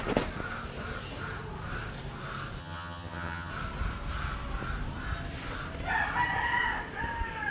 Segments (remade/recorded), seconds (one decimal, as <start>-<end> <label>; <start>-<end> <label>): 0.0-2.6 recorded; 2.6-3.5 remade; 3.5-7.5 recorded